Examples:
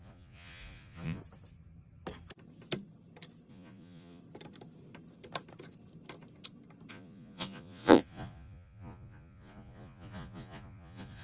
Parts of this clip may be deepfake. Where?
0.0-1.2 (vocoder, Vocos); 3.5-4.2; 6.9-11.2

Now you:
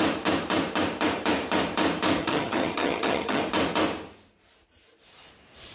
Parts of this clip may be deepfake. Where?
2.2-3.4 (vocoder, HiFi-GAN)